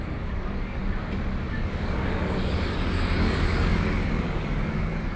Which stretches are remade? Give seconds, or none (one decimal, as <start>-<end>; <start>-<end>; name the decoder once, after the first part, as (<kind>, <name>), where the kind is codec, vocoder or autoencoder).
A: 0.0-0.8 (codec, DAC); 1.5-5.2